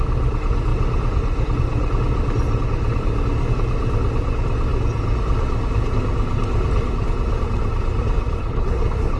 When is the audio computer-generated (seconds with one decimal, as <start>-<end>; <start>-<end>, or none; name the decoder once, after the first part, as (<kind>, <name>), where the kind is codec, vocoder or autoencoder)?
8.4-9.2 (codec, HILCodec)